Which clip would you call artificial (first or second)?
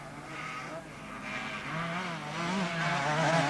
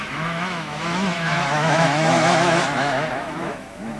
second